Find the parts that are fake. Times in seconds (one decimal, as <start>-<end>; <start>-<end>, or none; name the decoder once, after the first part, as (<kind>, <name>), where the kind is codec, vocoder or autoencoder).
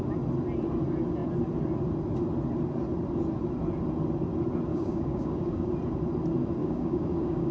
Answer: 4.7-5.7 (codec, DAC); 6.6-7.5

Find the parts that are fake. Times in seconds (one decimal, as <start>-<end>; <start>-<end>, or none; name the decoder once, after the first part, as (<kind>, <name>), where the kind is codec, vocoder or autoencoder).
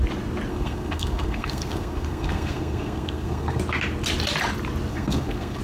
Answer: 0.5-3.6 (codec, SNAC); 4.9-5.6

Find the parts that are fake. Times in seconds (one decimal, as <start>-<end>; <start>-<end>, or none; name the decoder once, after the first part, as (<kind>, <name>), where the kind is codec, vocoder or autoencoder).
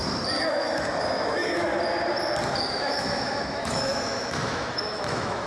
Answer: 0.5-1.7 (autoencoder, DAC-VAE); 2.7-5.5